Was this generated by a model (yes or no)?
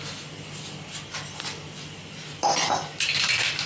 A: no